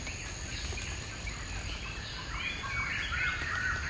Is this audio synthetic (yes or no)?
no